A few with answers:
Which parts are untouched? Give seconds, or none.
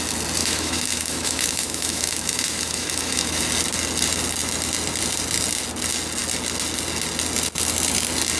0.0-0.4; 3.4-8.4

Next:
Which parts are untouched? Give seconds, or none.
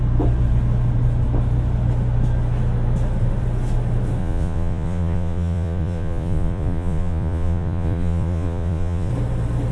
0.0-4.2; 9.1-9.7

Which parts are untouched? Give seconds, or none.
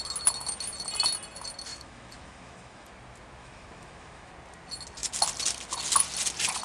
0.0-1.7; 2.9-3.4; 4.3-6.6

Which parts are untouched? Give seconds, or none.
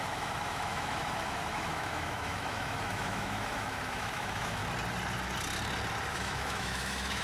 4.6-6.1